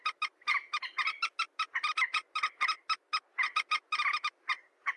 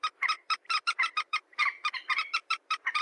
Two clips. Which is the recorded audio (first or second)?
first